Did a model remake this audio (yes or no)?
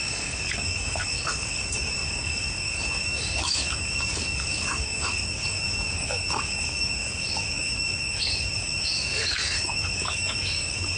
yes